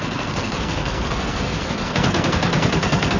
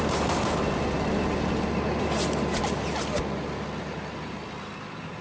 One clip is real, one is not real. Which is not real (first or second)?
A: first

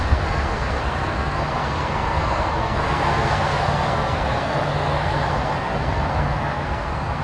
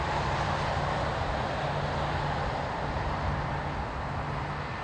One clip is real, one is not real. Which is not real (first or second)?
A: first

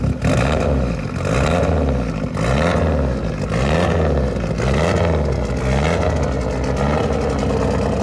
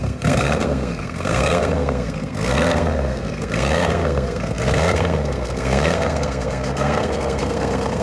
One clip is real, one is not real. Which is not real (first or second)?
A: second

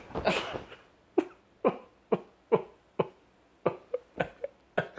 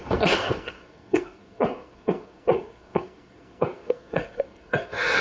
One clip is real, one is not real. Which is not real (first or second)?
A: second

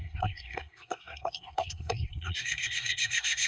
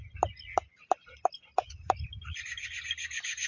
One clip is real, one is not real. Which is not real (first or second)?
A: first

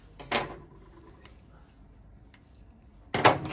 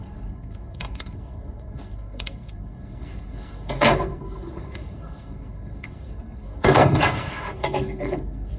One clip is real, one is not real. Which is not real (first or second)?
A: second